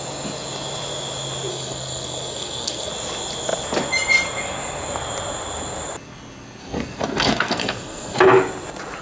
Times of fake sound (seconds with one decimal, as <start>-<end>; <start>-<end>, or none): 1.5-2.9; 6.6-8.2